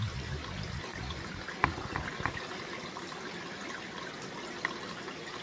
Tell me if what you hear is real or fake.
real